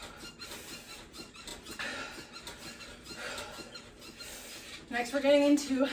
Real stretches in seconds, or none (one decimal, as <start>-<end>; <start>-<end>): 0.0-5.9